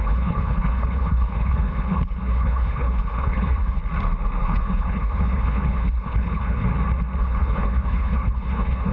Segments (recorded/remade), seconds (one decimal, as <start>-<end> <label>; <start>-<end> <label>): 0.0-3.8 remade; 3.8-4.4 recorded; 4.4-6.7 remade; 6.7-7.2 recorded; 7.2-8.9 remade